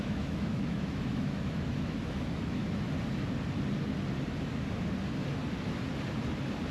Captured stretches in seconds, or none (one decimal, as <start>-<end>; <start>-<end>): 2.6-6.7